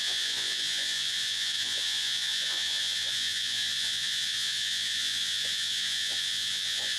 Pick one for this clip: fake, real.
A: fake